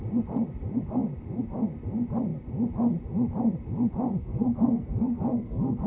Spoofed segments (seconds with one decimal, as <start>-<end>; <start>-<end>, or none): 4.2-5.9